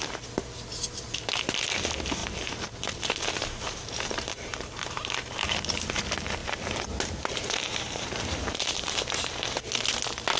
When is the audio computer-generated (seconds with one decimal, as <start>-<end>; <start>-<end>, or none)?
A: 0.7-1.6; 2.2-6.0; 6.4-9.0